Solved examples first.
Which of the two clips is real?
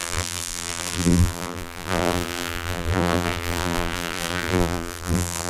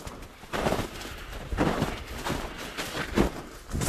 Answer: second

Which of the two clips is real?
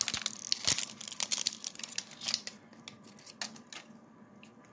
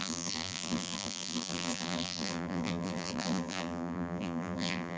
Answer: first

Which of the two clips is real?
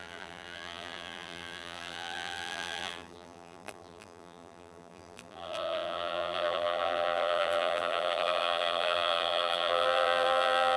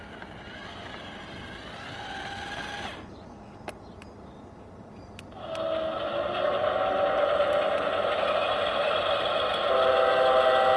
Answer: second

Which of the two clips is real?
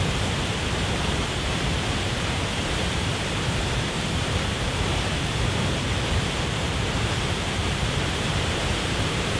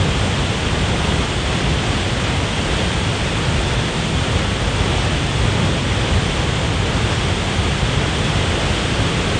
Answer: second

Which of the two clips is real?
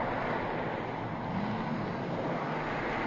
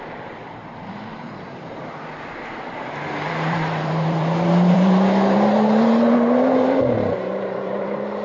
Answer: first